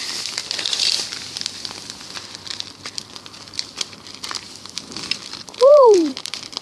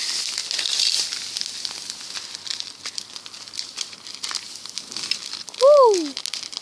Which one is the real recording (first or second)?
second